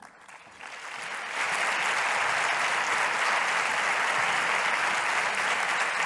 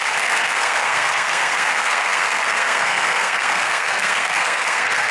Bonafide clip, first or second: first